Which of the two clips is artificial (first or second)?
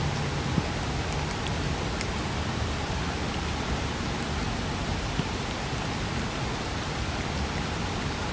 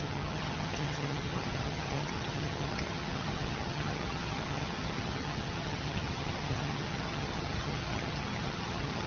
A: second